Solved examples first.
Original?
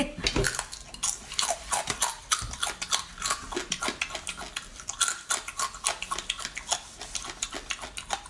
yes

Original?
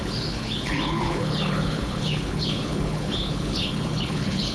no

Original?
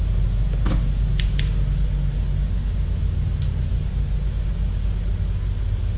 yes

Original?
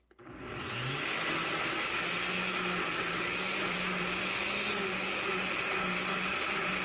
yes